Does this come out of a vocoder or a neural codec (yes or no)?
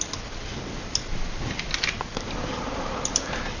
no